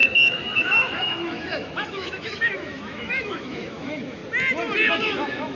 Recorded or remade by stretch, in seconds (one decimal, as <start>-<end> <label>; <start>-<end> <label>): 0.0-4.2 remade; 4.2-4.9 recorded; 4.9-5.6 remade